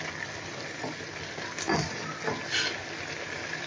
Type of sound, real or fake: real